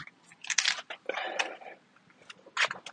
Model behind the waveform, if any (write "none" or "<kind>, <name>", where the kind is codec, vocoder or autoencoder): none